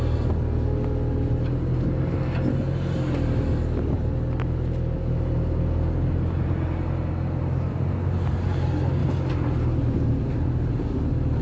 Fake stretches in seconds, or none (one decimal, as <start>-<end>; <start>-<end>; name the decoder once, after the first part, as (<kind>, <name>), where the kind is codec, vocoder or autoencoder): none